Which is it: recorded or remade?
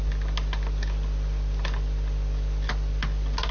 recorded